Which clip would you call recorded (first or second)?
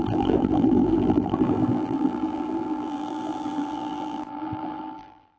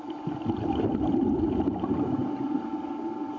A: second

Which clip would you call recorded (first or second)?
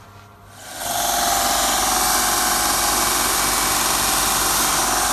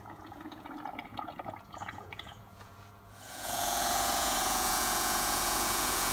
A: first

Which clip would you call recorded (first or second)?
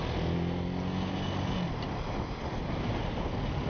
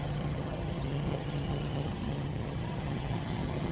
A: first